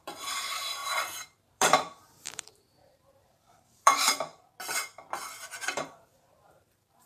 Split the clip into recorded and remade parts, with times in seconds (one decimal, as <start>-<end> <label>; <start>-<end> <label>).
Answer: 0.0-4.3 remade; 4.3-5.6 recorded; 5.6-7.1 remade